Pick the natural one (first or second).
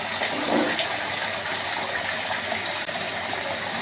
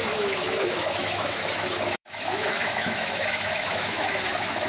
first